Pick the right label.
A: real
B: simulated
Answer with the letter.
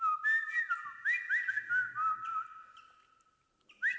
A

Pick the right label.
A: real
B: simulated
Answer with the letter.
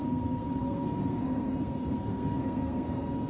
B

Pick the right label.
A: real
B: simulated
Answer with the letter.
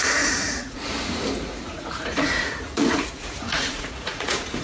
B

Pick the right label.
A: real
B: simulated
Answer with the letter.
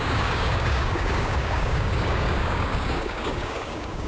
B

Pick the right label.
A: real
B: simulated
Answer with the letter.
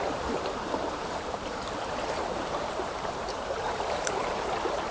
B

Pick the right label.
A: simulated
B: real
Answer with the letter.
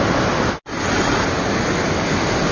B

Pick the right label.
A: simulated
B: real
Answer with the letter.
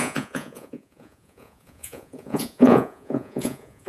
A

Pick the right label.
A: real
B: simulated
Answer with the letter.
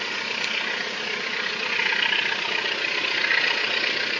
A